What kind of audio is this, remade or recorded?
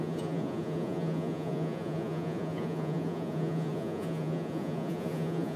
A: remade